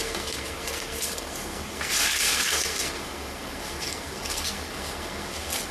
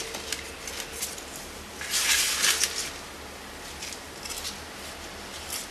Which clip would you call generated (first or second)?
first